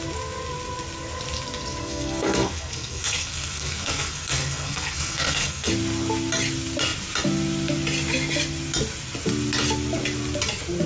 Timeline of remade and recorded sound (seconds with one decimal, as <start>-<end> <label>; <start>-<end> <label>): 0.0-1.8 recorded; 1.8-5.7 remade; 5.7-10.9 recorded